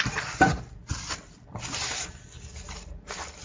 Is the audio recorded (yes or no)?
yes